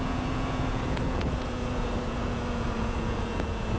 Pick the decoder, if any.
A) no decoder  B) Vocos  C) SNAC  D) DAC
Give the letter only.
B